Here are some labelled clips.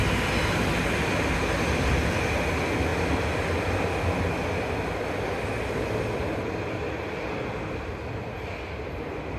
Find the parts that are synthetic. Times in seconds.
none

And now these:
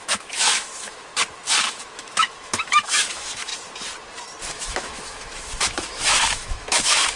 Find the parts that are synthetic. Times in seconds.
0.0-1.1 (autoencoder, DAC-VAE); 1.7-3.5; 4.5-7.2